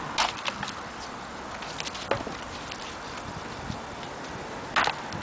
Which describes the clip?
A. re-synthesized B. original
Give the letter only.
B